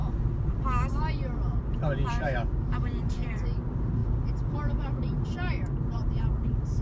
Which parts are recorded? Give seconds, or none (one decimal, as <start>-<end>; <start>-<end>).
0.0-2.1; 4.0-5.0